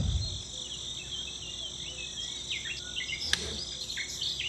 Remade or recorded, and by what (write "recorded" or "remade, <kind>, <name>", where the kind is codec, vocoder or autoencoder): recorded